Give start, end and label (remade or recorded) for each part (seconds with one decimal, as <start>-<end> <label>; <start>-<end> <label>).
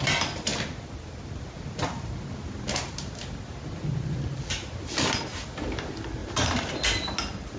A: 0.0-6.2 recorded; 6.2-6.7 remade; 6.7-7.6 recorded